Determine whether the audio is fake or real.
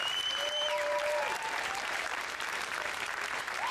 fake